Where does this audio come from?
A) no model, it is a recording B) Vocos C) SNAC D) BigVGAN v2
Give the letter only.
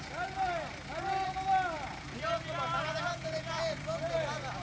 A